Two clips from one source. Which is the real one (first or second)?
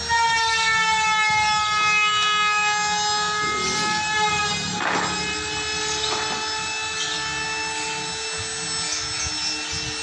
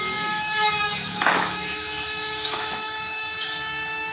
first